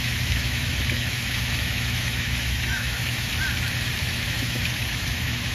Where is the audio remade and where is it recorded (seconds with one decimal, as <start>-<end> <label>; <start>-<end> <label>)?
0.0-3.3 remade; 3.3-4.0 recorded; 4.0-5.5 remade